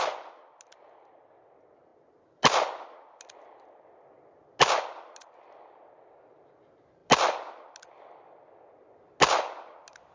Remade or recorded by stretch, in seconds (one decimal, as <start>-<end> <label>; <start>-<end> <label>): 0.0-10.1 recorded